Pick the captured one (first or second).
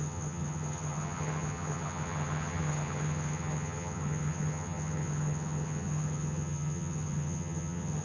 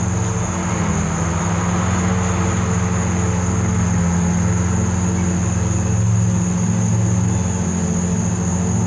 second